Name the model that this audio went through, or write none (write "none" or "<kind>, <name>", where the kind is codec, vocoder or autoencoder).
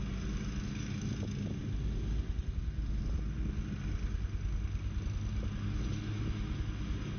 none